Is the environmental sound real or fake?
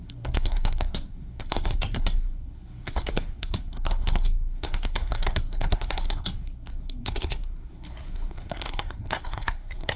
fake